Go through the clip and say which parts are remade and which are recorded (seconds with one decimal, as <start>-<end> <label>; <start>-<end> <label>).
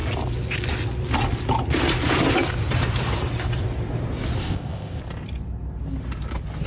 0.0-4.4 recorded; 4.4-5.0 remade; 5.0-6.7 recorded